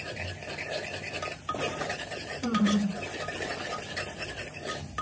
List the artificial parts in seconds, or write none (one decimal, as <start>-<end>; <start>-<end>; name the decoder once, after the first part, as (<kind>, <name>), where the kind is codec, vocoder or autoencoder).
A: 1.7-2.6 (vocoder, BigVGAN v2)